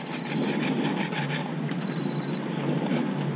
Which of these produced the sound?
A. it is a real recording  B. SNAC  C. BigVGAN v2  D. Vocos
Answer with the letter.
A